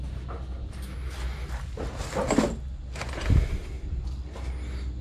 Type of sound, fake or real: real